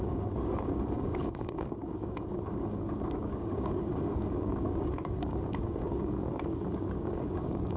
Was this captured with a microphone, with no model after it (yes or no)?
no